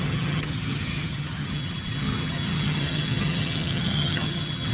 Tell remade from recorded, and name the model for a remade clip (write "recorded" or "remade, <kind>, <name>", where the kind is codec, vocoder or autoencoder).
remade, vocoder, HiFi-GAN